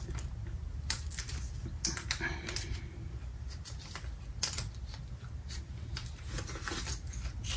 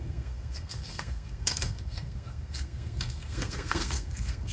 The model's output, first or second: second